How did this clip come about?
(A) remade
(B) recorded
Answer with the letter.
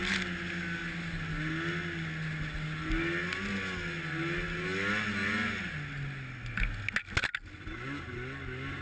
B